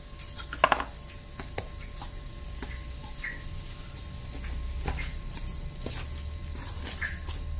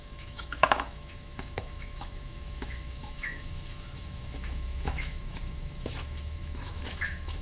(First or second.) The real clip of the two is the first